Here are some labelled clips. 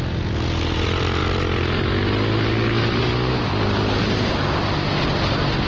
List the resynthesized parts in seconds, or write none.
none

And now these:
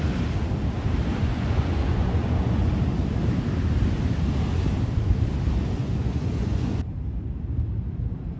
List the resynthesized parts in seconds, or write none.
1.2-2.7 (vocoder, Vocos); 5.8-6.8

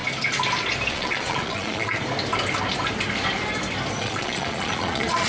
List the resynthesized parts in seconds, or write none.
0.9-2.0 (vocoder, Vocos); 4.0-5.3

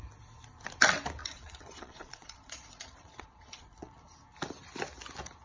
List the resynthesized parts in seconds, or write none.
1.2-3.9 (vocoder, Vocos)

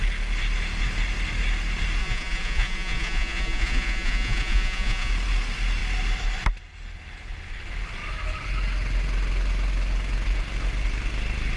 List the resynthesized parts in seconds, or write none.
2.0-5.1 (vocoder, Vocos)

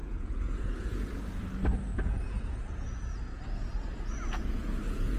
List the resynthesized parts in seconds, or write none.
0.0-1.4 (vocoder, Vocos); 1.9-5.2

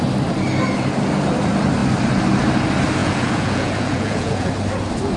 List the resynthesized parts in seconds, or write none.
3.0-4.5 (vocoder, Vocos)

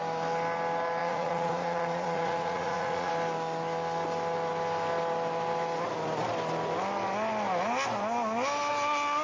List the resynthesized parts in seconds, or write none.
1.0-3.1 (vocoder, Vocos)